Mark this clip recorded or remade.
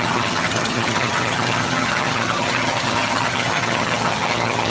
remade